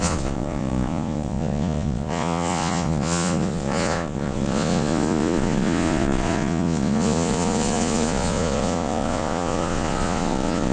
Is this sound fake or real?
fake